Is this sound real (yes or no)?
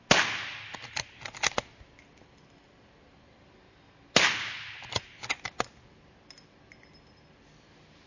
yes